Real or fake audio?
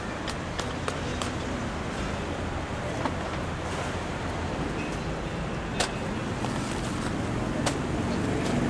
real